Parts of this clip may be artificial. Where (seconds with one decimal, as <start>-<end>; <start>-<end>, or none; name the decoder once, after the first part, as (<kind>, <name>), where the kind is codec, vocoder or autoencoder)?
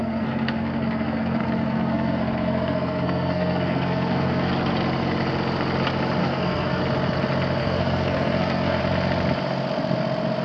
0.0-4.5 (codec, SNAC); 6.2-6.8; 7.6-8.8